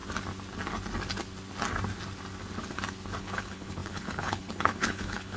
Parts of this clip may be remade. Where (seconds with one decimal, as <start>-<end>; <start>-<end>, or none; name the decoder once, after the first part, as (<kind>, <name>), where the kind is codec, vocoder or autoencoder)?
3.2-5.4 (codec, HILCodec)